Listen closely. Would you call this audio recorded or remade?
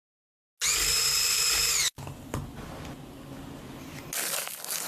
recorded